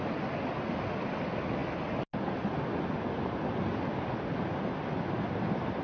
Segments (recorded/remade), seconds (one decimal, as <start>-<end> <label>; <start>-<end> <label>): 0.0-5.8 recorded